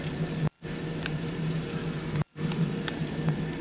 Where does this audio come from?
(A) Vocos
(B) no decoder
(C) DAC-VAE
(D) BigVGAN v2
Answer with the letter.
B